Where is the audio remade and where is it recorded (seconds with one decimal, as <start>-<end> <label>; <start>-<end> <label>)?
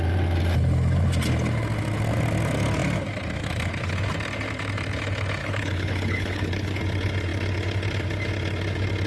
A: 0.0-5.4 recorded; 5.4-6.8 remade; 6.8-9.1 recorded